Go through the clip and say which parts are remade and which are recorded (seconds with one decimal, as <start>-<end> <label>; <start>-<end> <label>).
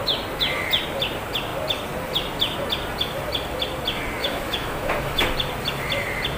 0.0-4.2 recorded; 4.2-5.2 remade; 5.2-6.4 recorded